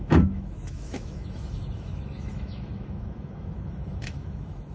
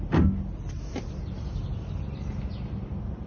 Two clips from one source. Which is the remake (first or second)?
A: first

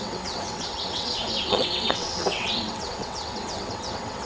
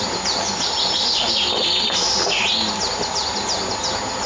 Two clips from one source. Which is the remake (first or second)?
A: first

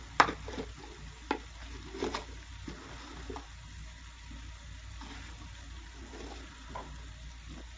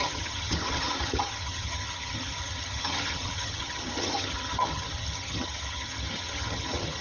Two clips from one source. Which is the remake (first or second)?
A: second